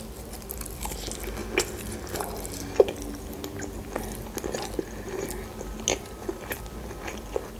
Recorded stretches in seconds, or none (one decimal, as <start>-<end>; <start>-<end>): 0.0-5.9; 6.6-7.6